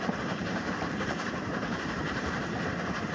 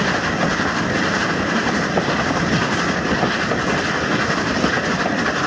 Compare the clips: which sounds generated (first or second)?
first